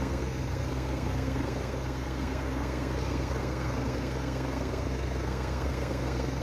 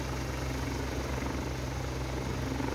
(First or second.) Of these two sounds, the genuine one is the second